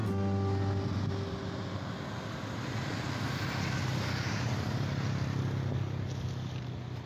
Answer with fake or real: real